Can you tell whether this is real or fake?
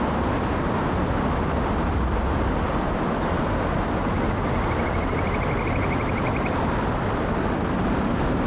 real